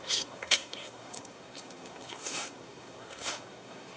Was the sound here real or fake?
fake